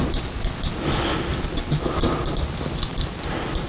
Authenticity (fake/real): real